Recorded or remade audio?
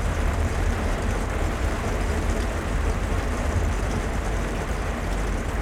remade